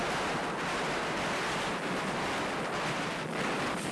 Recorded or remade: recorded